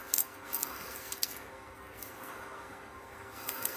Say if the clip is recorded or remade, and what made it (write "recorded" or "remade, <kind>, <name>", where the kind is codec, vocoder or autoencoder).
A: remade, codec, SNAC